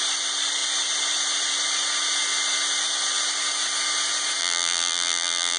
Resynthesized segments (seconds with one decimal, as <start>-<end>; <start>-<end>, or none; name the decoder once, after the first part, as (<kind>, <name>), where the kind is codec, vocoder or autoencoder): 4.4-5.6 (vocoder, BigVGAN v2)